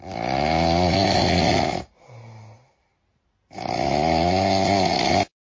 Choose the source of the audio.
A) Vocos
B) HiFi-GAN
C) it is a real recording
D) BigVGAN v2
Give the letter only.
C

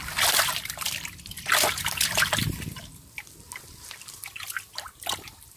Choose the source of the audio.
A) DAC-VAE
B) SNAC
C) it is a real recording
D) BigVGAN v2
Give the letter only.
C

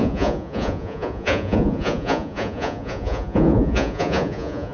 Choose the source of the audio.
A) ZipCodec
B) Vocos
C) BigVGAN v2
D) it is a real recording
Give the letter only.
B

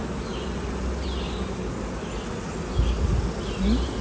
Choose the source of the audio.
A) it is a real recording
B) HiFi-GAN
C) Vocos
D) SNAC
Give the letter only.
A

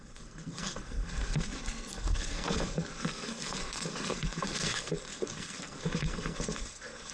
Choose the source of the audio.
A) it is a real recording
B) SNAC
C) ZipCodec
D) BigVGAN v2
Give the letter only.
B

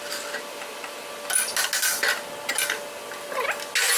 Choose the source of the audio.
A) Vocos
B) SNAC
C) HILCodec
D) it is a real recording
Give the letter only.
D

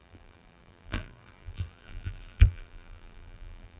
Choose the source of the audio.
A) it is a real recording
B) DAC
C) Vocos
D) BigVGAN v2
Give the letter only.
D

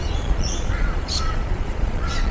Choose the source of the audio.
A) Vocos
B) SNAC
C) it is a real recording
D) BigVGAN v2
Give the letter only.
A